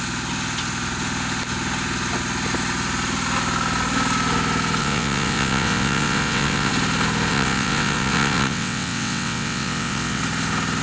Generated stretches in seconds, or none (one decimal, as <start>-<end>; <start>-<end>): 4.8-6.7; 7.3-10.2